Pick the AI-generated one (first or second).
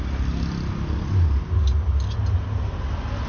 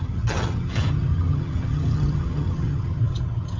second